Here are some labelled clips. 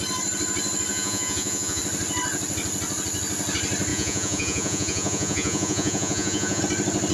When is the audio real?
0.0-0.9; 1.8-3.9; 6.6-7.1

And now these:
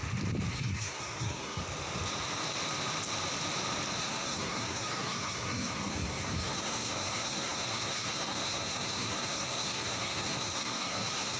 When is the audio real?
0.0-0.5; 1.6-4.0

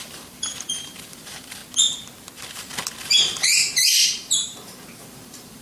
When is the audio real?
1.6-3.2

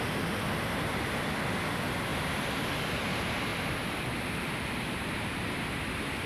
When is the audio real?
0.0-2.1; 2.9-3.5; 4.0-6.3

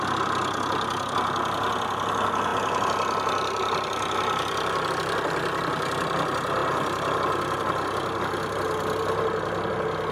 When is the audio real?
0.0-10.1